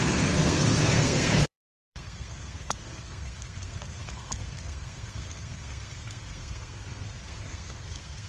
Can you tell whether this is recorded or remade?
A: remade